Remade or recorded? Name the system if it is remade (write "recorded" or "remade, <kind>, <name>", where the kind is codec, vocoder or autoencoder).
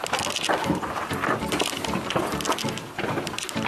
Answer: recorded